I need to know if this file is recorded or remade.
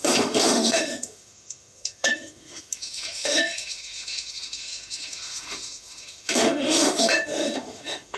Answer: remade